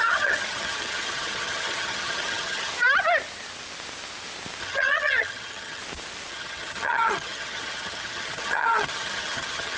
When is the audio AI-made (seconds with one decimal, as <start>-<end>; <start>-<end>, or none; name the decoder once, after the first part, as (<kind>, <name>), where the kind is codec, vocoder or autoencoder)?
0.0-2.7 (vocoder, HiFi-GAN); 4.6-5.8; 6.3-9.8